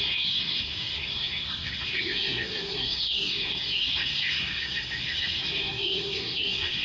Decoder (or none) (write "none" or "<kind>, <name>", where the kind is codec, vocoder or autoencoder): codec, SNAC